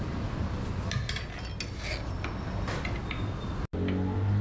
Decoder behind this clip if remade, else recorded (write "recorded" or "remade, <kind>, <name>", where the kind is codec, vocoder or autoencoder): recorded